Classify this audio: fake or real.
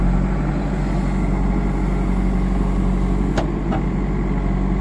real